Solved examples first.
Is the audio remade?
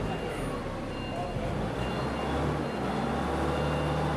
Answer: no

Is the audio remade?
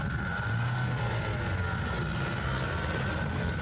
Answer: no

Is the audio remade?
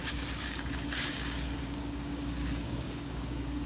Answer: yes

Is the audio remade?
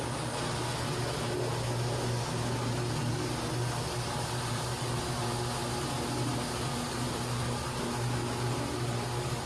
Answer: no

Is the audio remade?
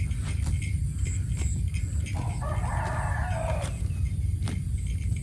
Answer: no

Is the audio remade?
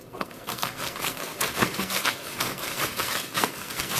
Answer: yes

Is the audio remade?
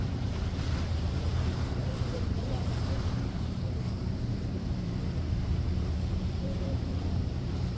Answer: yes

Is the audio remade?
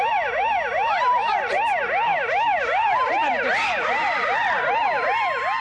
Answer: no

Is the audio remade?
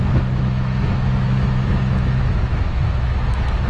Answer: yes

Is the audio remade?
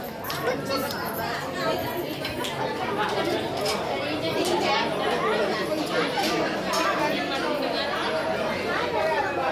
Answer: no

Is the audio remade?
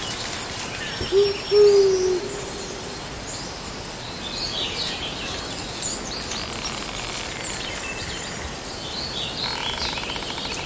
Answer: no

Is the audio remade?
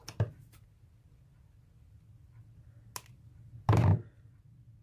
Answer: no